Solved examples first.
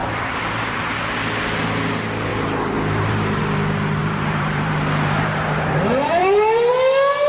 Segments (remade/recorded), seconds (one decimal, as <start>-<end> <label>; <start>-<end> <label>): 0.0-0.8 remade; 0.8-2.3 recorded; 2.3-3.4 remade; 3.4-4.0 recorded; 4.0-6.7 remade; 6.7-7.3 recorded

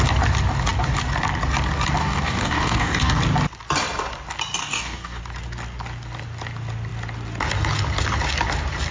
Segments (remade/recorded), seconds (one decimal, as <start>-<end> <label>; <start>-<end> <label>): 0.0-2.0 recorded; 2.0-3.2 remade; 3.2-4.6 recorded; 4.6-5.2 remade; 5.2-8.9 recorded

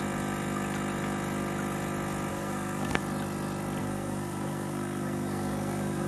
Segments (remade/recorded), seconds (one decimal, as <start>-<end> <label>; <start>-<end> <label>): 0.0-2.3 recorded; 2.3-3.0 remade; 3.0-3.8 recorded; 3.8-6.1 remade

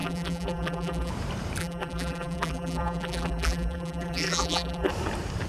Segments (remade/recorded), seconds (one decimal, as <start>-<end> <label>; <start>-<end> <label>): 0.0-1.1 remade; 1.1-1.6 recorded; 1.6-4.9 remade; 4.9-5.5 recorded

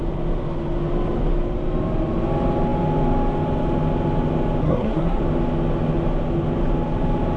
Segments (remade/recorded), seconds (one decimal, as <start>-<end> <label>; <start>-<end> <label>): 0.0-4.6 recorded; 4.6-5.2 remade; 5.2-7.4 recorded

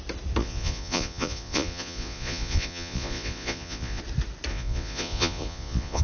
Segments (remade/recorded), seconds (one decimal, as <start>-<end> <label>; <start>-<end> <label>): 0.0-0.4 recorded; 0.4-4.0 remade; 4.0-4.5 recorded; 4.5-6.0 remade